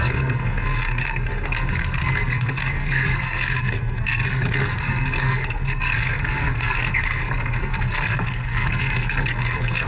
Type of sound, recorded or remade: remade